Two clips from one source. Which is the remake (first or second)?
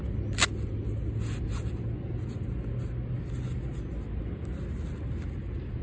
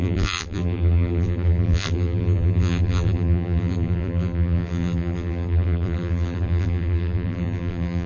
second